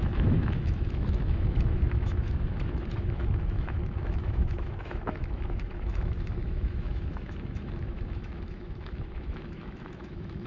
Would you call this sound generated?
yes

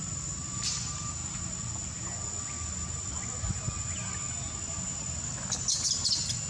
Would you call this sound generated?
no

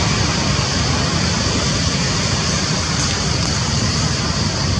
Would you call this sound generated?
no